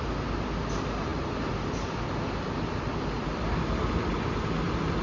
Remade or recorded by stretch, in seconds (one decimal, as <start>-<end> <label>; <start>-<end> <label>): 0.0-5.0 recorded